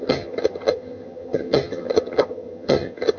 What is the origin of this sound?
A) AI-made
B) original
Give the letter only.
A